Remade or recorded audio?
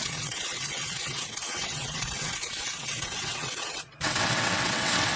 remade